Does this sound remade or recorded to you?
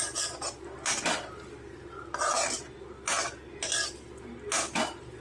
recorded